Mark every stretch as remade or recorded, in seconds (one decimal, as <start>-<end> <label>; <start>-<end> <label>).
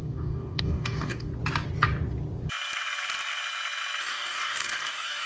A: 0.0-1.3 remade; 1.3-4.0 recorded; 4.0-5.3 remade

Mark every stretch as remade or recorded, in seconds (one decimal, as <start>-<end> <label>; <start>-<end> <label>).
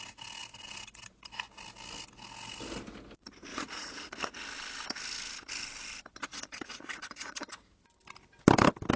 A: 0.0-3.5 recorded; 3.5-4.4 remade; 4.4-6.3 recorded; 6.3-7.5 remade; 7.5-9.0 recorded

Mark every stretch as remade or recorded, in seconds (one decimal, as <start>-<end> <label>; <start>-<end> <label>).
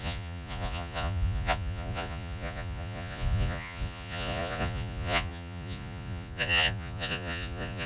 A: 0.0-7.9 remade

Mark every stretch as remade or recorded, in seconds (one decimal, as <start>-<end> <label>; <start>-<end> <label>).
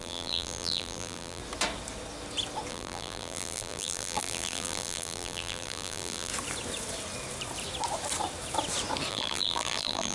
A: 0.0-1.4 remade; 1.4-2.7 recorded; 2.7-6.3 remade; 6.3-9.1 recorded; 9.1-10.1 remade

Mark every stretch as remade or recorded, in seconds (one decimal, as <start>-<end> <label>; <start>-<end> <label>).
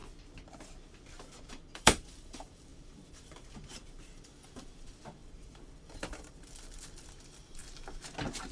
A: 0.0-1.5 recorded; 1.5-7.6 remade; 7.6-8.5 recorded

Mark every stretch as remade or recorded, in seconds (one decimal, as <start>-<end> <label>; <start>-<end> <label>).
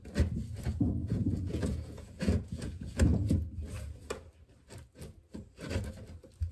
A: 0.0-1.0 recorded; 1.0-3.0 remade; 3.0-6.5 recorded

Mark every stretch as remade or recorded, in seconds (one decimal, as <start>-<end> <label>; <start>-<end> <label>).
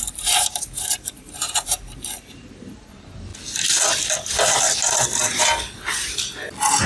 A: 0.0-3.3 remade; 3.3-6.9 recorded